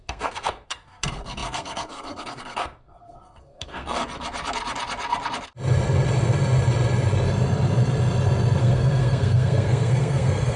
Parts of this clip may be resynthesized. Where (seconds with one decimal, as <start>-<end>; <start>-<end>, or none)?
0.0-4.0; 8.6-10.6